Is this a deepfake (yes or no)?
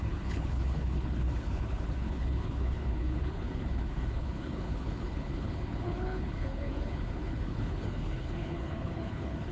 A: yes